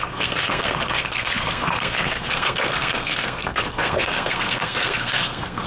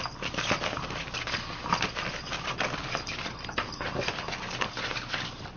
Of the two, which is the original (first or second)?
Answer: second